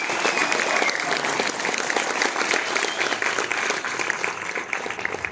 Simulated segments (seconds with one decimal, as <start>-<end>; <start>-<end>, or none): 3.5-4.2